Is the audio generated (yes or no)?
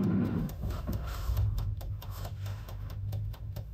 yes